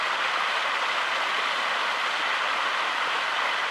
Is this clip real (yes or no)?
yes